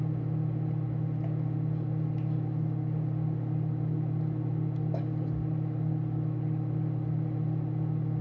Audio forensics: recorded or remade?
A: recorded